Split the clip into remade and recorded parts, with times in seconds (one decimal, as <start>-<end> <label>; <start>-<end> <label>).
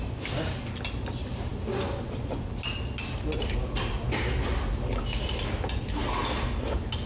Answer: 0.0-7.1 recorded